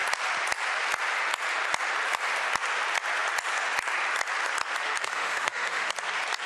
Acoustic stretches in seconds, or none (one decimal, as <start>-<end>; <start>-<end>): 0.0-4.8; 5.9-6.5